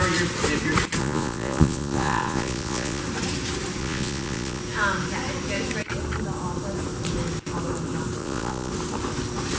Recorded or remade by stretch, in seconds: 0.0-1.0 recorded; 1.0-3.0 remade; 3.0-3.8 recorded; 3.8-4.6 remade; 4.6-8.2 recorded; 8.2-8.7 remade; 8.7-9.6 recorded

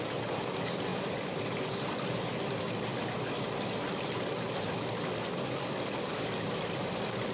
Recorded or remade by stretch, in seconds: 0.0-2.9 remade; 2.9-4.0 recorded; 4.0-7.3 remade

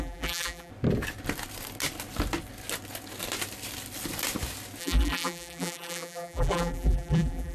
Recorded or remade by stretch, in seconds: 0.0-0.7 remade; 0.7-4.8 recorded; 4.8-7.5 remade